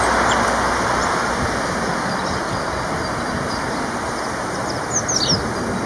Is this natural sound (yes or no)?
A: yes